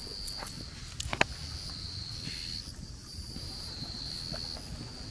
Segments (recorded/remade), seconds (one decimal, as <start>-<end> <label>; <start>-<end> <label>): 0.0-3.0 recorded; 3.0-4.0 remade; 4.0-5.1 recorded